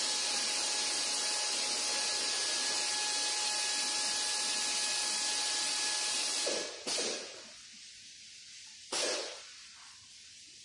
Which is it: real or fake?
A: real